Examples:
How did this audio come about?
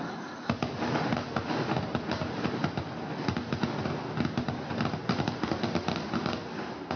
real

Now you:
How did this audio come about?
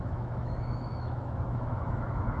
fake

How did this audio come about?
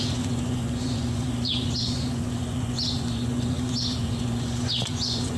fake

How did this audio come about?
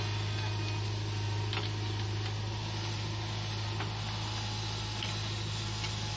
real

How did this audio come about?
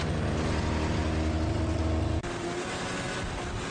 real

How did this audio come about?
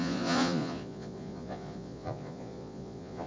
fake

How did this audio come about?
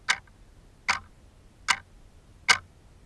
real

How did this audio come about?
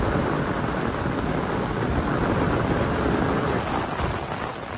real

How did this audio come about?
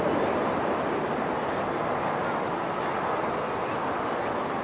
real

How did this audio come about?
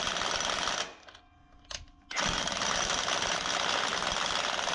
real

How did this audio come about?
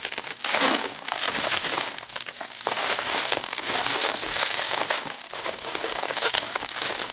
fake